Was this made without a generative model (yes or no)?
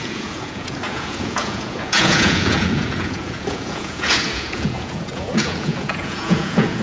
no